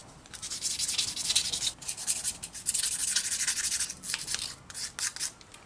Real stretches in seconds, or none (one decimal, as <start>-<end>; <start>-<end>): 0.7-5.7